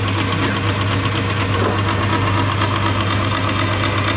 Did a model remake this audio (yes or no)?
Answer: no